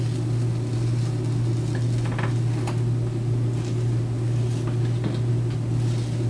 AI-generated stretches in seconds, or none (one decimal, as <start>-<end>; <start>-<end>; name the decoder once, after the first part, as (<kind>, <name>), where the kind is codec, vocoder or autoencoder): none